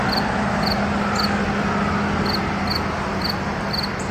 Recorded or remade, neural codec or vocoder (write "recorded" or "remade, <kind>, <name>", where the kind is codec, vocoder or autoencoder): recorded